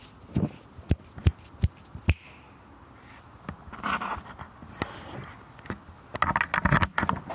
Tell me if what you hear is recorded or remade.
recorded